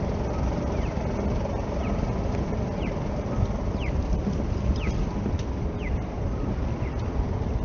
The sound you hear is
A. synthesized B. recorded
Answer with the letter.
B